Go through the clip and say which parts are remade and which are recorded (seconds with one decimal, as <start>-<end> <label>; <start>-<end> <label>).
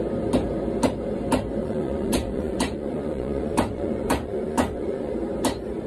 0.0-1.6 recorded; 1.6-5.1 remade; 5.1-5.9 recorded